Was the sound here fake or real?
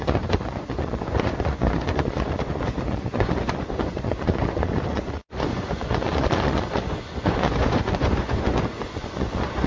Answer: fake